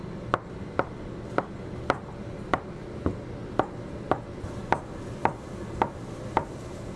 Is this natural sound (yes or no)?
yes